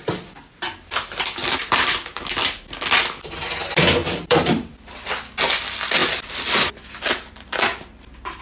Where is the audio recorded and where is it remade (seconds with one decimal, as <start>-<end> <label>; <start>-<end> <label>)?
0.0-1.4 recorded; 1.4-2.2 remade; 2.2-4.0 recorded; 4.0-4.7 remade; 4.7-8.4 recorded